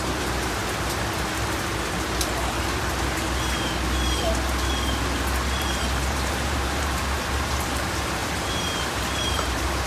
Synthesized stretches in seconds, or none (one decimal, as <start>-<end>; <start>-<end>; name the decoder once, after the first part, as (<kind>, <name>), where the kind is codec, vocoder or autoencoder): 0.0-0.6 (vocoder, BigVGAN v2); 5.6-9.9